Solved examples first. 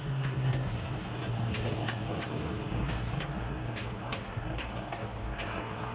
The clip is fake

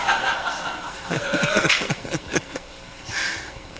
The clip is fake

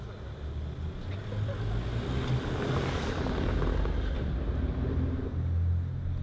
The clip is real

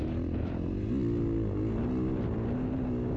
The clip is real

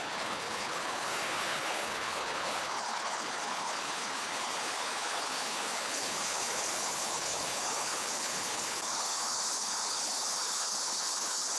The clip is fake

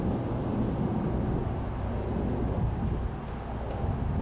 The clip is real